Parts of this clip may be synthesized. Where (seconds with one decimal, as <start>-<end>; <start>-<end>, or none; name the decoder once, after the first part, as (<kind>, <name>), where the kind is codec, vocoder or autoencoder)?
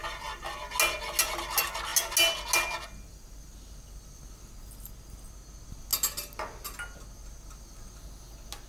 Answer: none